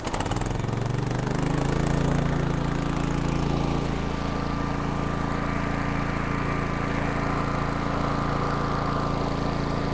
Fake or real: real